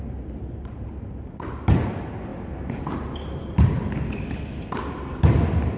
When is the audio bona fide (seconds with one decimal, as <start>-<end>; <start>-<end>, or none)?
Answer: 0.0-5.8

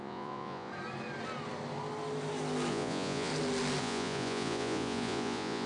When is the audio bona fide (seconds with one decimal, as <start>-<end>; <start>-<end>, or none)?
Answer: 0.7-2.7; 3.3-3.8